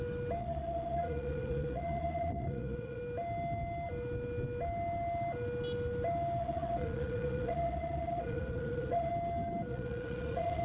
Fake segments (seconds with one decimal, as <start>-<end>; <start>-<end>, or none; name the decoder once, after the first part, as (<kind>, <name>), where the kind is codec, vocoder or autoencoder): 0.4-3.0 (vocoder, Vocos); 6.4-9.1; 9.7-10.6